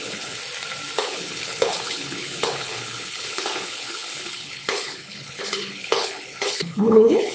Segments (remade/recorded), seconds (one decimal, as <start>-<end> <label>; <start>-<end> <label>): 0.0-0.4 remade; 0.4-1.0 recorded; 1.0-7.3 remade